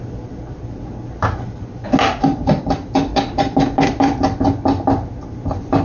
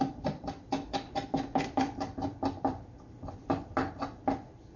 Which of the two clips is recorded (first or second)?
first